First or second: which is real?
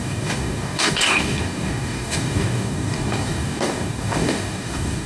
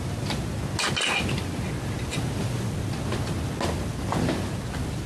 second